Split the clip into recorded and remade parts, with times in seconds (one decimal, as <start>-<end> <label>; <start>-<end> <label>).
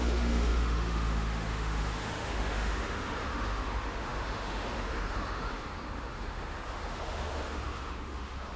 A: 0.0-8.6 remade